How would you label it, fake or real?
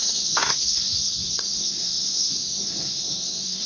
fake